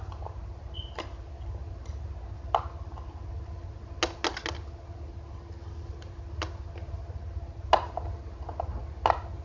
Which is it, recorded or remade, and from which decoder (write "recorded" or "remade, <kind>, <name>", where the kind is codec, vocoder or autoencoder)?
recorded